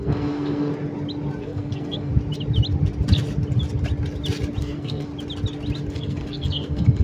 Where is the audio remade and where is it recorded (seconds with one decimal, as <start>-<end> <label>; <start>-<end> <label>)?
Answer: 0.0-0.7 remade; 0.7-1.4 recorded; 1.4-2.1 remade; 2.1-4.6 recorded; 4.6-5.1 remade; 5.1-5.9 recorded; 5.9-7.0 remade